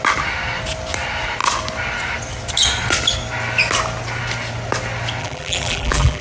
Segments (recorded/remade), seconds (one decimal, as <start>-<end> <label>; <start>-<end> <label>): 0.0-5.2 recorded; 5.2-6.2 remade